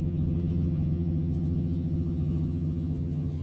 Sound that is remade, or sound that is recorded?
remade